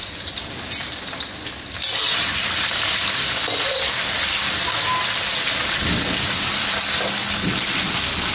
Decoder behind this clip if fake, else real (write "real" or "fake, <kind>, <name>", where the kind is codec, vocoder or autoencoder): real